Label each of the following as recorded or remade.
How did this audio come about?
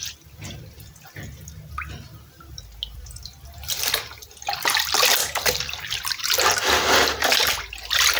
recorded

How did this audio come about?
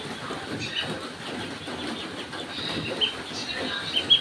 recorded